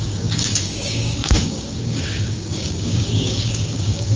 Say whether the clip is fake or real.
fake